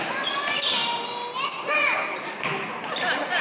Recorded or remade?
recorded